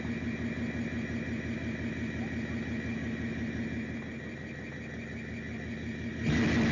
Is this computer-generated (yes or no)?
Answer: no